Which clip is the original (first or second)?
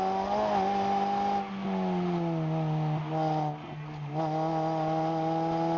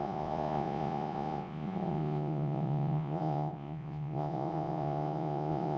first